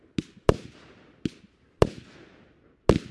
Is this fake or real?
real